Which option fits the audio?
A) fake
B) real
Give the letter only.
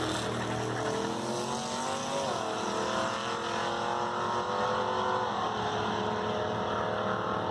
B